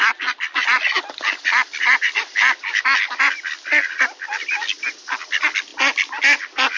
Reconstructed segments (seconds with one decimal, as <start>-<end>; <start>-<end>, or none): none